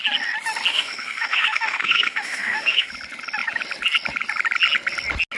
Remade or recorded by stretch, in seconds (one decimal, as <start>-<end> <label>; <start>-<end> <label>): 0.0-0.7 recorded; 0.7-2.9 remade; 2.9-5.4 recorded